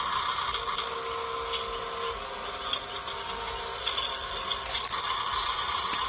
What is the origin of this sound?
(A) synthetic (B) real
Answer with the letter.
B